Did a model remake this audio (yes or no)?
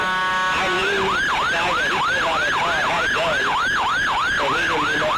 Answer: no